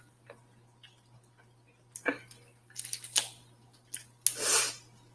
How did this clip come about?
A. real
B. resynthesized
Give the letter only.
A